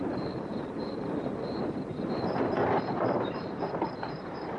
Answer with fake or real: fake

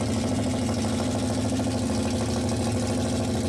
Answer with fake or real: real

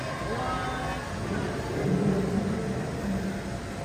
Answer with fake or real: real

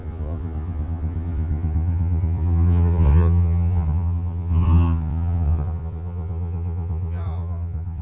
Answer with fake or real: fake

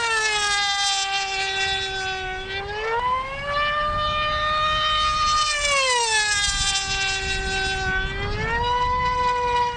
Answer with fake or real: real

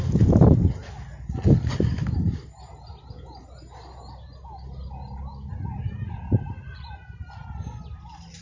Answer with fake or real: real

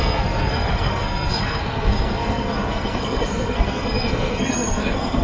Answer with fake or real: fake